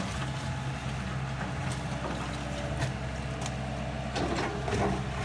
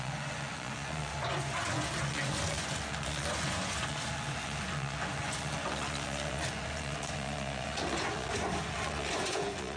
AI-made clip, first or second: second